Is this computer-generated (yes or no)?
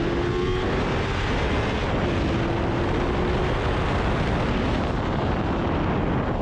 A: no